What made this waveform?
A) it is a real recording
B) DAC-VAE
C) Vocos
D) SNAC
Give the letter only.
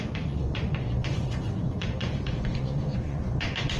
C